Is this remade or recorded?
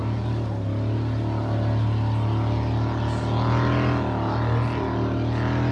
recorded